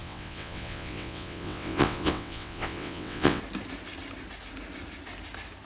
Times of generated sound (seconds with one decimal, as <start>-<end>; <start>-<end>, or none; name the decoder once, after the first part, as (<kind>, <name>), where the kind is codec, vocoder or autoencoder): 0.0-3.4 (vocoder, WaveNeXt)